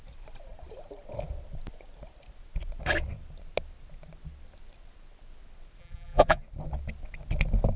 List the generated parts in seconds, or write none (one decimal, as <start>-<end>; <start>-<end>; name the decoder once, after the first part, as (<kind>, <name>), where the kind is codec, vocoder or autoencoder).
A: 5.8-6.4 (vocoder, BigVGAN v2)

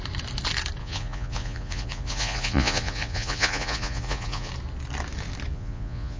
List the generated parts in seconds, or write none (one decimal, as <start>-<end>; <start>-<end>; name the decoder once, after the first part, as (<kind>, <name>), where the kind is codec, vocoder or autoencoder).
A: 0.8-4.5 (vocoder, Vocos); 5.5-6.2

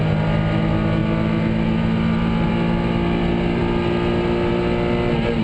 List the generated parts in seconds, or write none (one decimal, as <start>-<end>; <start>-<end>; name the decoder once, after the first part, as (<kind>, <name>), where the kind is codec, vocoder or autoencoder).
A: none

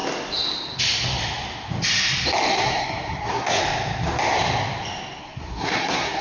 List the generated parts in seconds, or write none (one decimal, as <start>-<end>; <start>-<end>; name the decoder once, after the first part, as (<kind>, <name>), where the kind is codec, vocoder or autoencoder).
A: 2.5-3.6 (codec, SNAC); 5.2-6.2